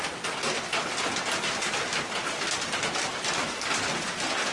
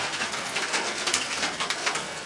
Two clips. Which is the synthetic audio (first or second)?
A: second